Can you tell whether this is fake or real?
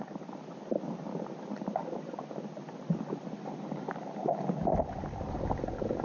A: real